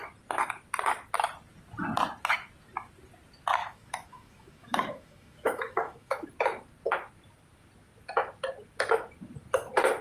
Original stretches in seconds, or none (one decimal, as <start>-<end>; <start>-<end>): 0.0-3.6; 6.3-10.0